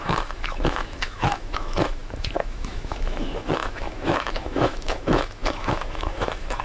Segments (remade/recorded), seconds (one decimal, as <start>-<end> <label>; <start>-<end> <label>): 0.0-6.6 remade